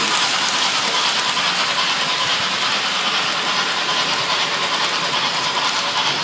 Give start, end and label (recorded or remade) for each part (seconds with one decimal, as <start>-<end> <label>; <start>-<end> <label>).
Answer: 0.0-2.3 recorded; 2.3-5.6 remade; 5.6-6.2 recorded